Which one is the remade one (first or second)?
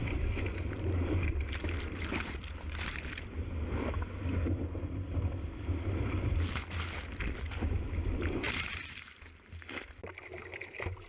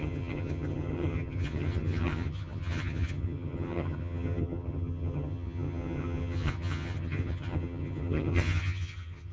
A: second